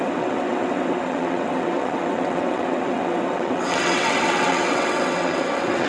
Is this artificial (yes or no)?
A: yes